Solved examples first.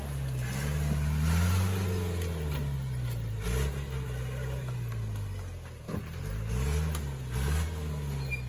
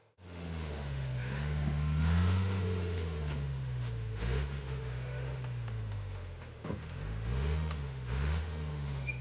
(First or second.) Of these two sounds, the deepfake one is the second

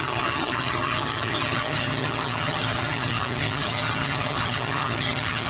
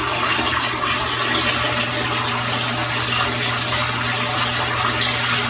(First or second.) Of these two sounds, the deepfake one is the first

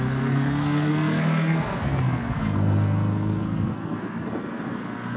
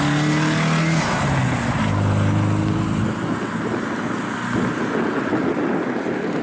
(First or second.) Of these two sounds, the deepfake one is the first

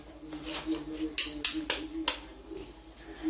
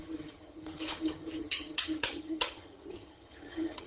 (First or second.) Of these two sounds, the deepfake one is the second